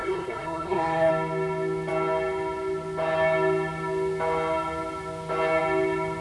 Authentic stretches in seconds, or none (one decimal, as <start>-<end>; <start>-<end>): 1.1-6.2